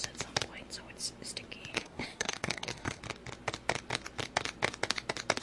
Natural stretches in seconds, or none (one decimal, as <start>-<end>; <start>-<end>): 0.0-1.7; 3.0-5.4